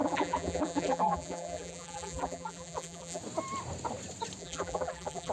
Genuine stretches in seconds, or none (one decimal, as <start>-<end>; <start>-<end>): 3.2-4.4